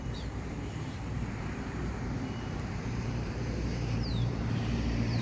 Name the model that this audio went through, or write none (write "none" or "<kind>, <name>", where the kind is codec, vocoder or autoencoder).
vocoder, BigVGAN v2